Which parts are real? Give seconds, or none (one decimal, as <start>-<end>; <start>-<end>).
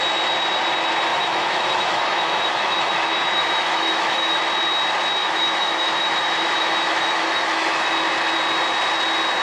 0.0-1.1; 4.4-5.2; 7.9-9.4